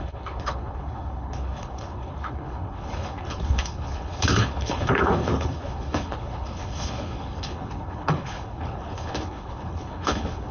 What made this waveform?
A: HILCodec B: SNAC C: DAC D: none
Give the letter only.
A